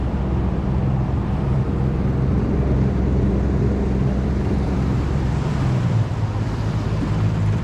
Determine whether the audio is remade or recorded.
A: remade